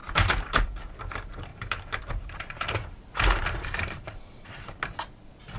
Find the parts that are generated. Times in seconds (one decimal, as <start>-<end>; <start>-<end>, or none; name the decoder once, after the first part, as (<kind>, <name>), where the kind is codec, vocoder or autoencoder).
0.0-0.7 (vocoder, BigVGAN v2); 1.5-4.9

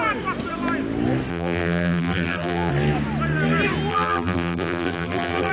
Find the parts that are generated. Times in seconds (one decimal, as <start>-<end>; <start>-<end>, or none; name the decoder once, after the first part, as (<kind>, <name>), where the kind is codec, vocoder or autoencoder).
1.3-2.7 (vocoder, BigVGAN v2); 3.9-5.5